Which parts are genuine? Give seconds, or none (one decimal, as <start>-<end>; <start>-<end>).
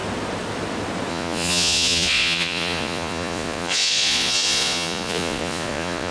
0.0-1.1